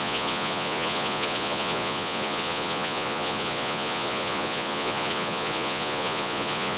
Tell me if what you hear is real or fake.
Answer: fake